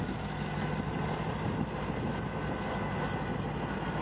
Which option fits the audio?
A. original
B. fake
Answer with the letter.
A